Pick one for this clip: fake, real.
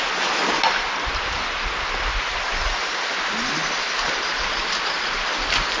real